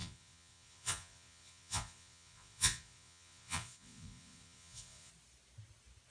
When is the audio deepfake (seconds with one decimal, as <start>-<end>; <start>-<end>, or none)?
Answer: 0.0-5.1